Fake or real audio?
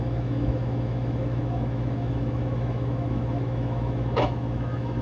fake